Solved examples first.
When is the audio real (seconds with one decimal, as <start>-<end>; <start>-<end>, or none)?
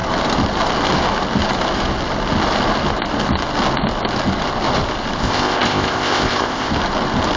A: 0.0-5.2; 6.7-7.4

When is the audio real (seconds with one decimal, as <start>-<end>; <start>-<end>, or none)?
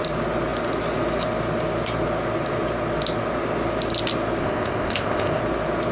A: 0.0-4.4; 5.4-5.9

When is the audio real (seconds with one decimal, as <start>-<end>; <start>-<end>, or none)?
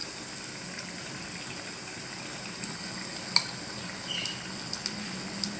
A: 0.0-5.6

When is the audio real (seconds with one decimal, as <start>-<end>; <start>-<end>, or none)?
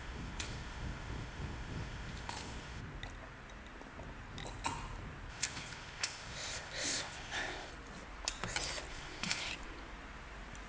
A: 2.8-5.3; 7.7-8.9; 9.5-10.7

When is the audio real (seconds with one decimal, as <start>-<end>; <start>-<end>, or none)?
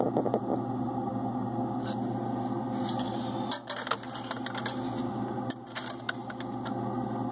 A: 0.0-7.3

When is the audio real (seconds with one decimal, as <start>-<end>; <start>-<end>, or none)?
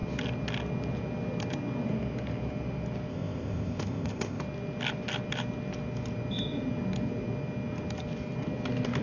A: 0.0-3.1; 4.4-9.0